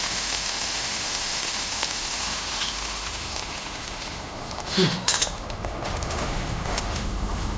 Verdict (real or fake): fake